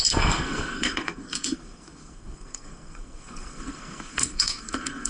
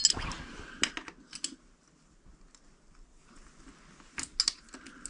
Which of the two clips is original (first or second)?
second